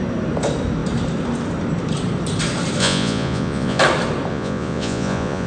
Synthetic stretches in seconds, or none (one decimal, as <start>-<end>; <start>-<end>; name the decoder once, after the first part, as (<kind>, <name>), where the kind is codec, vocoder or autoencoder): 2.8-3.8 (vocoder, Vocos); 4.3-5.5